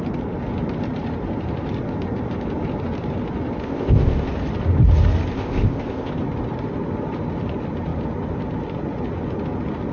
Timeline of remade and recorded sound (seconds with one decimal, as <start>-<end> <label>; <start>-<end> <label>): 0.0-3.6 recorded; 3.6-4.3 remade; 4.3-5.3 recorded; 5.3-6.1 remade; 6.1-9.9 recorded